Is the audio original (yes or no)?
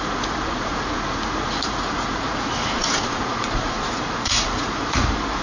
no